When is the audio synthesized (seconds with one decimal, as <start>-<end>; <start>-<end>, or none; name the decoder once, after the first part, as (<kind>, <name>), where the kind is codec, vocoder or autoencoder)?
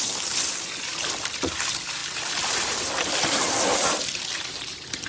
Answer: 0.0-5.1 (vocoder, BigVGAN v2)